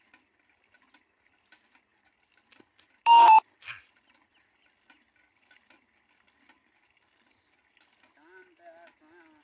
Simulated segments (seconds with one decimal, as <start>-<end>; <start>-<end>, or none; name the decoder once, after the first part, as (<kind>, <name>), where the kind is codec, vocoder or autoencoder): none